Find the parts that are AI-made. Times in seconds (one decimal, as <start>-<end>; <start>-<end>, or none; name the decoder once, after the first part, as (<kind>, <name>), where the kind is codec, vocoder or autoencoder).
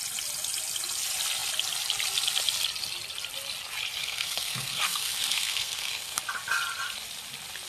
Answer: 4.0-6.2 (codec, SNAC)